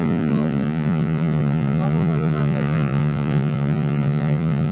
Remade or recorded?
remade